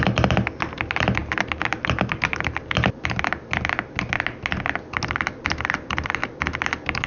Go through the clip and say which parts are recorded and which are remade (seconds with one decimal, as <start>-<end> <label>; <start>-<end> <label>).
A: 0.0-7.1 recorded

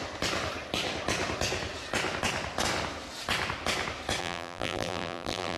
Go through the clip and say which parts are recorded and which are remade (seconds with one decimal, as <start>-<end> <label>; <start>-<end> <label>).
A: 0.0-4.2 recorded; 4.2-5.6 remade

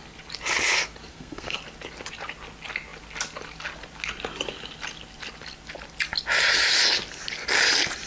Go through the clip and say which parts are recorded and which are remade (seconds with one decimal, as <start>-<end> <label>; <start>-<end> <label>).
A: 0.0-1.1 recorded; 1.1-1.6 remade; 1.6-8.1 recorded

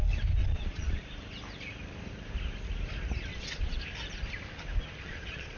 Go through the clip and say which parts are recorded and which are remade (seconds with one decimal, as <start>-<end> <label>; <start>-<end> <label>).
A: 0.0-0.4 recorded; 0.4-1.0 remade; 1.0-3.3 recorded; 3.3-3.8 remade; 3.8-5.0 recorded; 5.0-5.6 remade

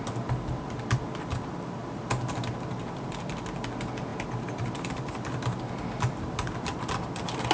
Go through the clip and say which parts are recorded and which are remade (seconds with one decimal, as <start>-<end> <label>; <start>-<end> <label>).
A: 0.0-7.5 recorded

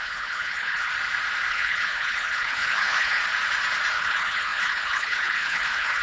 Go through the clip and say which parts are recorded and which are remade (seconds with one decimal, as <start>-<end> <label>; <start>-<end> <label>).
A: 0.0-0.9 remade; 0.9-1.5 recorded; 1.5-3.2 remade; 3.2-3.9 recorded; 3.9-6.0 remade